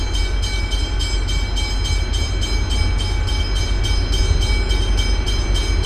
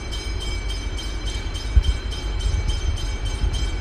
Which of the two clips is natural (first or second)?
first